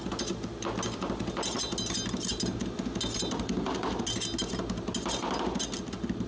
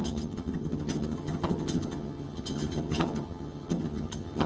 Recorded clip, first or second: first